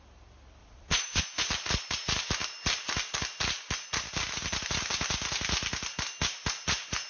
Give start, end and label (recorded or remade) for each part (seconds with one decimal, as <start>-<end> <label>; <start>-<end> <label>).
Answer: 0.0-0.6 recorded; 0.6-1.2 remade; 1.2-7.1 recorded